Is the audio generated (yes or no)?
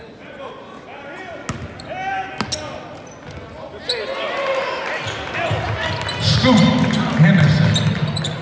no